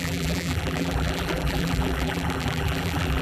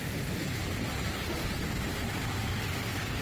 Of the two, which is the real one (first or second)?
second